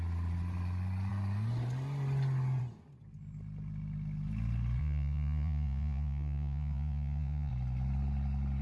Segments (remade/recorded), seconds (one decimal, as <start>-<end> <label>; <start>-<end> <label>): 0.0-4.8 recorded; 4.8-7.5 remade; 7.5-8.6 recorded